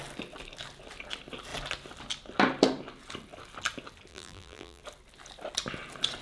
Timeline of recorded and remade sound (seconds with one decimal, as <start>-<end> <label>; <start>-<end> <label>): 0.0-4.1 recorded; 4.1-4.8 remade; 4.8-6.2 recorded